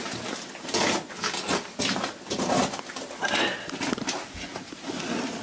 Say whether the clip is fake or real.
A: real